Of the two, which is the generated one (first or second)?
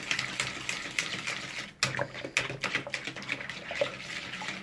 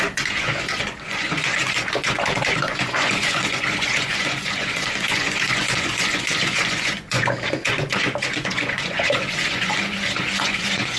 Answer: second